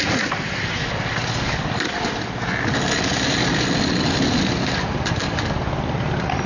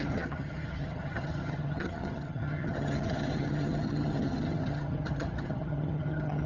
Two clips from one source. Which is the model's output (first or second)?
second